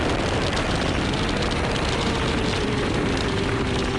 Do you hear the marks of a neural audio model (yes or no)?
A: no